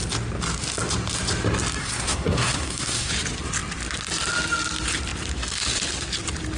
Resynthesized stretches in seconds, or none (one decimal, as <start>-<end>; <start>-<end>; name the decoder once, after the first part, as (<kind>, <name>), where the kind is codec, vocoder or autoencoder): 1.8-3.1 (codec, SNAC)